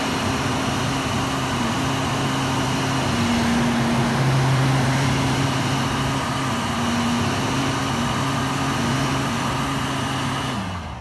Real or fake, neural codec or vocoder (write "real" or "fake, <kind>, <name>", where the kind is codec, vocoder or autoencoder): real